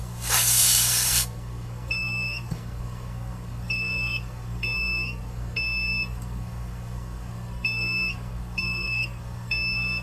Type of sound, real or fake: fake